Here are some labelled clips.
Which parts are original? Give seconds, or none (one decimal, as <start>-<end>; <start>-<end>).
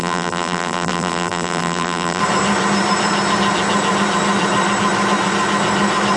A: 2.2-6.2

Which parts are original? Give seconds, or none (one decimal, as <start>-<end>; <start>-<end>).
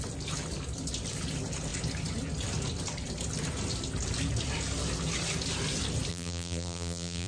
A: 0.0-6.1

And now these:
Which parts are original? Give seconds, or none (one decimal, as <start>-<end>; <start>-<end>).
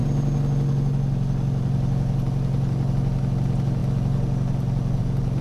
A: 0.0-5.4